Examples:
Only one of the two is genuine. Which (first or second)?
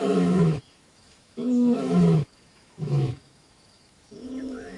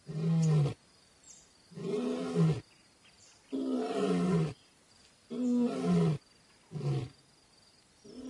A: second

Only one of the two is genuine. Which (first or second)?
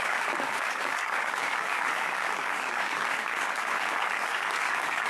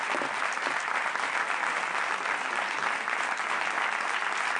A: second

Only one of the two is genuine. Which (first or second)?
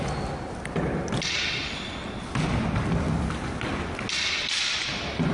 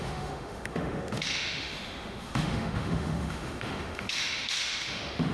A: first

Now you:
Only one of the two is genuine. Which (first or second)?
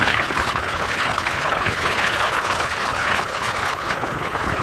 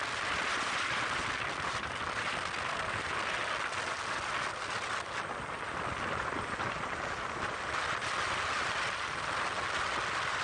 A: second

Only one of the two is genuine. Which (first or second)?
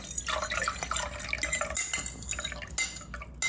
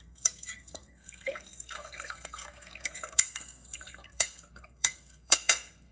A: first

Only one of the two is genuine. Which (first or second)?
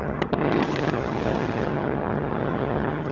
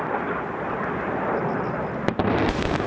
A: second